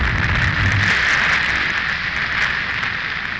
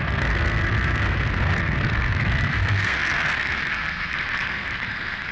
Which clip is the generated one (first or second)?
second